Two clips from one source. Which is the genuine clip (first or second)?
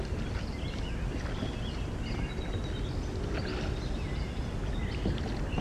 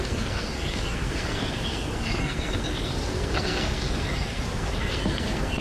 first